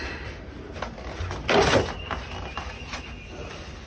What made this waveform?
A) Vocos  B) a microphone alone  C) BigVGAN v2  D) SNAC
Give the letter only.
B